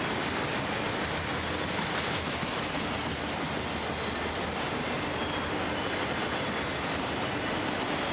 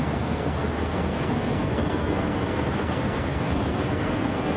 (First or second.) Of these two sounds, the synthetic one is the second